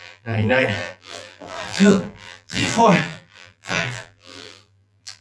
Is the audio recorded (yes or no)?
no